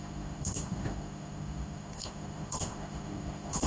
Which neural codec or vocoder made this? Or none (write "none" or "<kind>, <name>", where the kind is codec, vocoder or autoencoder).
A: autoencoder, DAC-VAE